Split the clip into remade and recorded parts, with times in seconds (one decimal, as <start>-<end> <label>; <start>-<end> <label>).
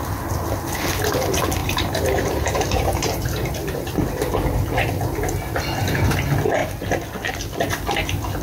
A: 0.0-1.6 recorded; 1.6-4.1 remade; 4.1-8.4 recorded